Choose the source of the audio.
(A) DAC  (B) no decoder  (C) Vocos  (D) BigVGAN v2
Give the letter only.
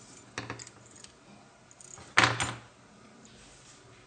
B